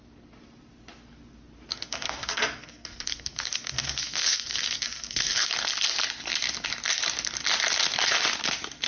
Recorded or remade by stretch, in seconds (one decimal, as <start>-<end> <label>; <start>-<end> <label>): 0.0-1.7 recorded; 1.7-5.5 remade; 5.5-8.9 recorded